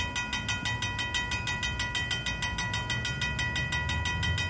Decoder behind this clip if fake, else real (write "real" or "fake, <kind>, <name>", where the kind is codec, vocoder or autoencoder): real